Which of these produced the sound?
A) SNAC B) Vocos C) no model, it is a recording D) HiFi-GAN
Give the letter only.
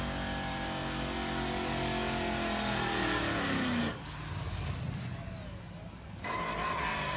C